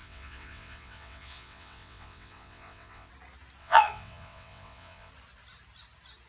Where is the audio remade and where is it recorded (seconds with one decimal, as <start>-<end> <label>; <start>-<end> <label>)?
0.0-3.1 remade; 3.1-3.6 recorded; 3.6-5.1 remade; 5.1-6.3 recorded